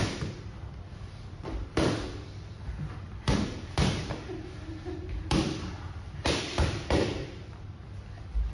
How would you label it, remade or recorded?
remade